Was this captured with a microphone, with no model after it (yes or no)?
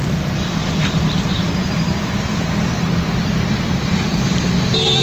no